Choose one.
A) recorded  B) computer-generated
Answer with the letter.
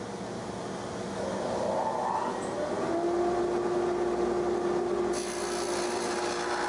A